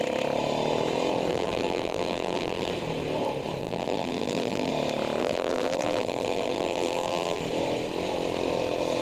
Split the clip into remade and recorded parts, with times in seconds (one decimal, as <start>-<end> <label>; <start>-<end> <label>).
0.0-1.3 recorded; 1.3-2.7 remade; 2.7-3.6 recorded; 3.6-4.7 remade; 4.7-5.2 recorded; 5.2-7.4 remade; 7.4-9.0 recorded